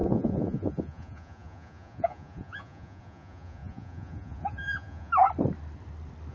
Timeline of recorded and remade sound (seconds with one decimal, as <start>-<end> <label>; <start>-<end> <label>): 0.0-5.1 remade; 5.1-6.3 recorded